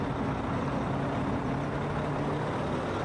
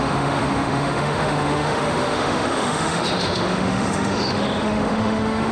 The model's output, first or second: second